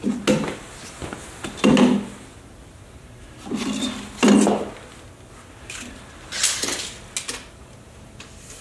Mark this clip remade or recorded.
recorded